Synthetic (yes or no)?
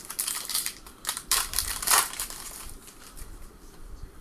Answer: yes